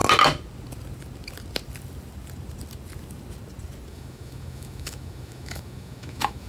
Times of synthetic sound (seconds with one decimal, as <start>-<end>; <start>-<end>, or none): 3.9-6.5